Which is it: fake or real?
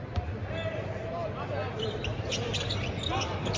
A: real